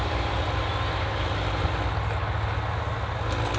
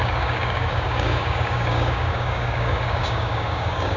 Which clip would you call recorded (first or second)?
first